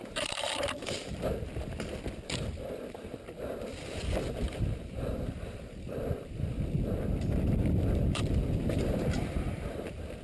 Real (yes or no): no